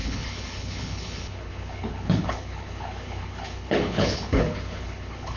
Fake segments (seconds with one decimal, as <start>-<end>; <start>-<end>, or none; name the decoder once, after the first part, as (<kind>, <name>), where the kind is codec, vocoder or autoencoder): 0.0-5.4 (codec, HILCodec)